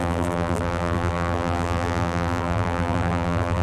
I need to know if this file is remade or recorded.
remade